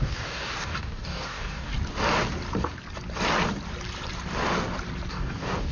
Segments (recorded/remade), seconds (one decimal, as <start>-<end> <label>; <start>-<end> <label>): 0.0-1.7 remade; 1.7-5.1 recorded; 5.1-5.7 remade